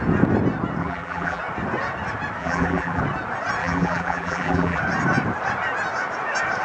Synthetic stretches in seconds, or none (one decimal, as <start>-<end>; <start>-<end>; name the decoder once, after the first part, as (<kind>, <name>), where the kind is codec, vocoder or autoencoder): 0.8-1.4 (vocoder, BigVGAN v2); 2.4-3.0; 3.6-4.8